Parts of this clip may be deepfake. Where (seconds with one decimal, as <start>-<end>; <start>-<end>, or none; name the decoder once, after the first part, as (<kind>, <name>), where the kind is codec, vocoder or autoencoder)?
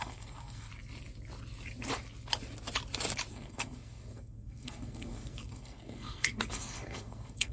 0.0-0.7 (codec, SNAC); 3.3-7.5